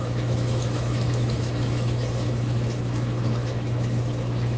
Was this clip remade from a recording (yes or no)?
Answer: yes